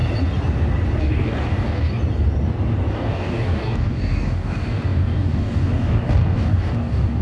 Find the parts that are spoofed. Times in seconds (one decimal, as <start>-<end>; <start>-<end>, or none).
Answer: 1.0-1.9; 2.9-7.2